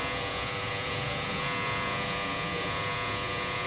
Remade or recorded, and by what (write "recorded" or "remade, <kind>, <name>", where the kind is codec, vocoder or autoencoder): remade, vocoder, Vocos